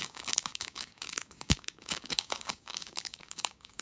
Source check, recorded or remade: remade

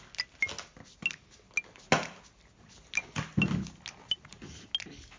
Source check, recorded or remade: recorded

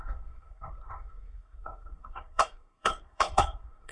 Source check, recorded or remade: remade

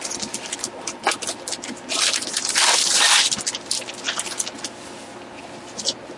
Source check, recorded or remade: recorded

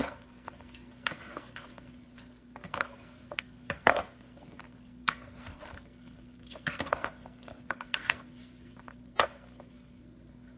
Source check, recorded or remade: remade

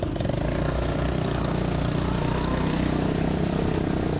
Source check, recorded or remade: recorded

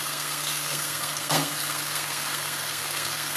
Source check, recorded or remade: remade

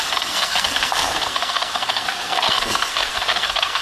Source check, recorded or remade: remade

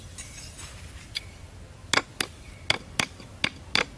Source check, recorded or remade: recorded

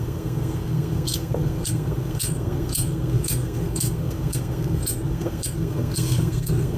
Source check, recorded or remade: remade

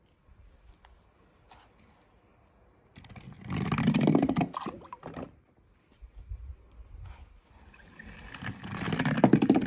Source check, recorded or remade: recorded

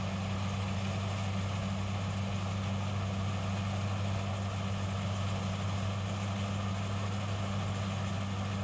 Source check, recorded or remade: recorded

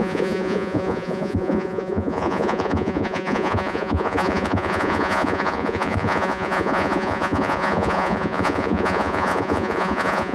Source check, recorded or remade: remade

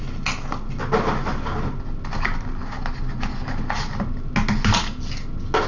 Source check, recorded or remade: recorded